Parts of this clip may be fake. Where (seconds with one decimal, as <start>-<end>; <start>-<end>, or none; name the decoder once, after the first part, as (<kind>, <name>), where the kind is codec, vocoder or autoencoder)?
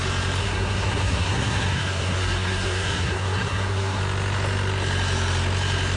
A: 0.4-4.0 (codec, SNAC)